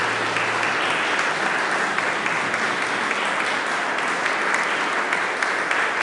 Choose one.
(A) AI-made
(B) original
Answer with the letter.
B